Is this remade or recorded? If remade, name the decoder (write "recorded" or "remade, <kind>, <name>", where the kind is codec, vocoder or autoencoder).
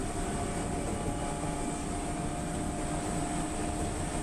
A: recorded